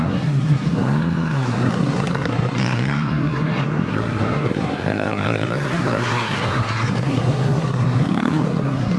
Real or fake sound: fake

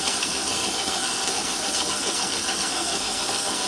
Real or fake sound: fake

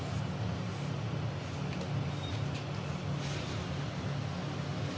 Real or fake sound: real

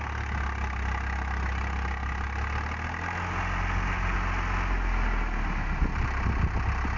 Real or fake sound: real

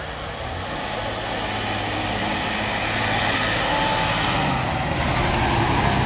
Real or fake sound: real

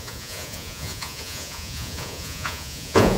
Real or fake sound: fake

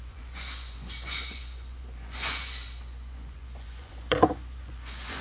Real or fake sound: fake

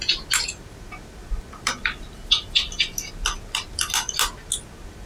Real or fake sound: real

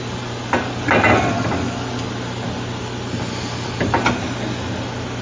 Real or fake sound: real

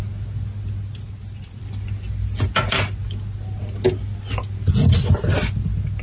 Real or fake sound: real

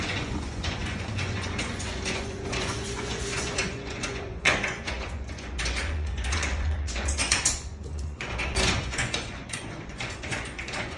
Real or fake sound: fake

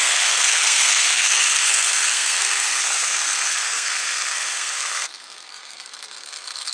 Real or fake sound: fake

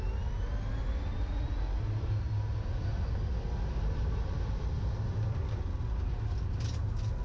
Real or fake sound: real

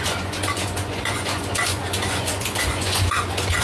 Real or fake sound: fake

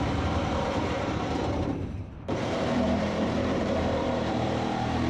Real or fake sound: fake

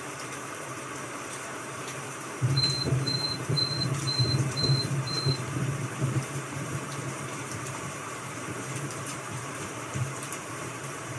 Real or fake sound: fake